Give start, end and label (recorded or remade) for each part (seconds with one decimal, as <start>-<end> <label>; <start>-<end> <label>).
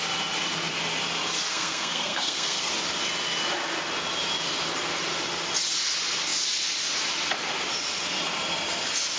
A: 0.0-1.5 recorded; 1.5-2.7 remade; 2.7-9.2 recorded